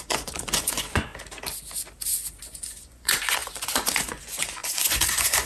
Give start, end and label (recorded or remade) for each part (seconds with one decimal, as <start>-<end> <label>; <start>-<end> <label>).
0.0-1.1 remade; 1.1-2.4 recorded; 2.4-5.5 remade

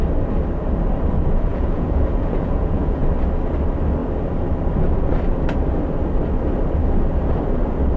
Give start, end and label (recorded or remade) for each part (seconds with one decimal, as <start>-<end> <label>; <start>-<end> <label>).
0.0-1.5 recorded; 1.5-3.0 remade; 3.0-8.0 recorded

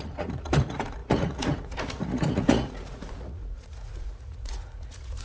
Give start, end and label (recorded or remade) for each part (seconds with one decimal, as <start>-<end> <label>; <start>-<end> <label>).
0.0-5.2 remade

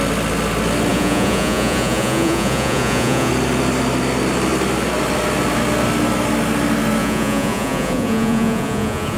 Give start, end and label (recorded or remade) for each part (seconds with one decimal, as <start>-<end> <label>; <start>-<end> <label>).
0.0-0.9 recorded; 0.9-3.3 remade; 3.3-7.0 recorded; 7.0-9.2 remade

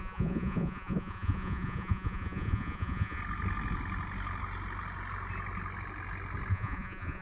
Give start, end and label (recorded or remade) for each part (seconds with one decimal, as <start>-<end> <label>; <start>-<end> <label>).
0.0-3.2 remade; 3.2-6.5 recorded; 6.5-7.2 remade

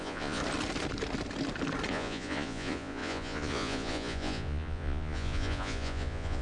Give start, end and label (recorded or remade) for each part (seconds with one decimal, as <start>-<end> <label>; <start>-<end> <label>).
0.0-0.4 remade; 0.4-1.9 recorded; 1.9-6.4 remade

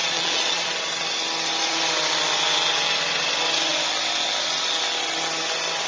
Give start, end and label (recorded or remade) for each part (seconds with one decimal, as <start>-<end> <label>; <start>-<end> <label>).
0.0-0.7 remade; 0.7-5.9 recorded

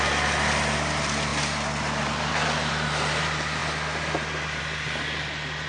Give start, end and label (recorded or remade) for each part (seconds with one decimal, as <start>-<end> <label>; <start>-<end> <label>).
0.0-5.7 recorded